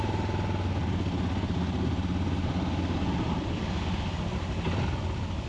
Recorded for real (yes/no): yes